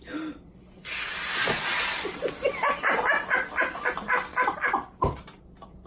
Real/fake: real